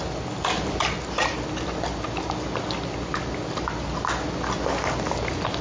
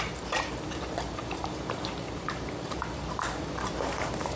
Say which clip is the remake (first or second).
second